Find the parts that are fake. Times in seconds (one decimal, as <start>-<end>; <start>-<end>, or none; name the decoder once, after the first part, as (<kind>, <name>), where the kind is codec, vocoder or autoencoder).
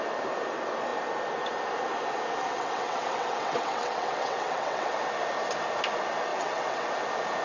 2.5-5.0 (vocoder, WaveNeXt); 6.3-6.9